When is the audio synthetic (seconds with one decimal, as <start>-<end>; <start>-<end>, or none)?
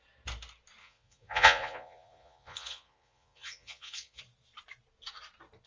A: 0.8-4.2